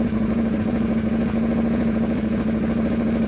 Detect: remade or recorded remade